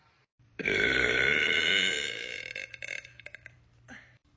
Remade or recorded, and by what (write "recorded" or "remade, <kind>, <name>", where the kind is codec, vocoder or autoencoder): remade, vocoder, BigVGAN v2